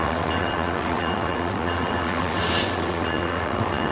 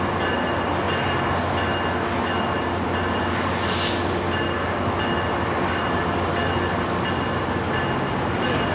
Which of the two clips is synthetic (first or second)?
first